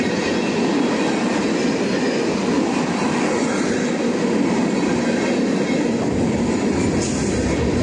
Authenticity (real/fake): real